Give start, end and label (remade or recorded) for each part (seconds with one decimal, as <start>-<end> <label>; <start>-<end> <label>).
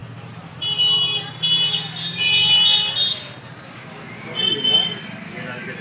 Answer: 0.0-5.8 recorded